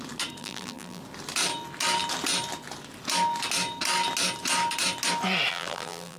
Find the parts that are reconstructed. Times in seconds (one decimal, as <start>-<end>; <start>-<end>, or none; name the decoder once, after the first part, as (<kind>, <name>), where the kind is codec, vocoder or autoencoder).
0.4-1.0 (vocoder, BigVGAN v2); 5.5-6.2